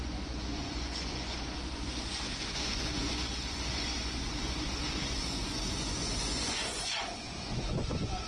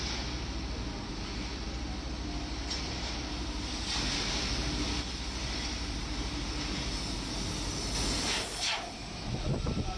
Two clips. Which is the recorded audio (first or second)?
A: second